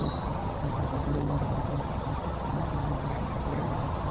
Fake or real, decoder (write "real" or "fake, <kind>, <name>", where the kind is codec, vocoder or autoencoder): fake, vocoder, HiFi-GAN